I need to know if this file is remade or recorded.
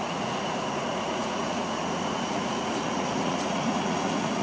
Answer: remade